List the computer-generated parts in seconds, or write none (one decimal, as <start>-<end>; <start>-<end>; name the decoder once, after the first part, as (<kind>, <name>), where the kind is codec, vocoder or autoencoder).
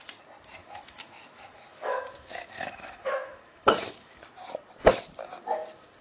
0.6-4.2 (autoencoder, DAC-VAE)